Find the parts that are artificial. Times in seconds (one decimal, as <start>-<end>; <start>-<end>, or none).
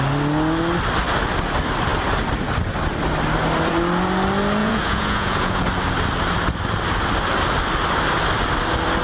4.6-5.6